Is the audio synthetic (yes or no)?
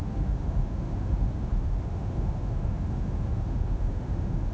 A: yes